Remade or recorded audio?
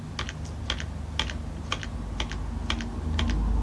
recorded